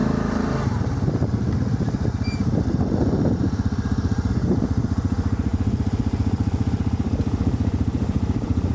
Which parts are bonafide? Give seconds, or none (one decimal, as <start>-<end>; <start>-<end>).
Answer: 4.3-5.5